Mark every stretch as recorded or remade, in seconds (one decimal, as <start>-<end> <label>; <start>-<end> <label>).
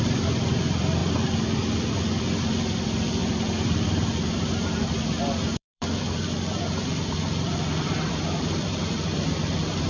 0.0-1.0 remade; 1.0-2.2 recorded; 2.2-9.9 remade